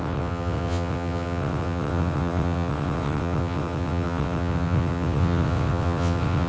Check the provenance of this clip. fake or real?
fake